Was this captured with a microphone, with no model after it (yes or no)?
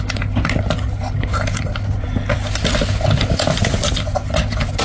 yes